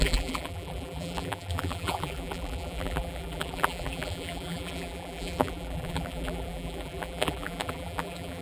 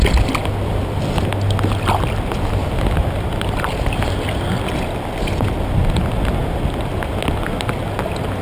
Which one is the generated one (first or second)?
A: first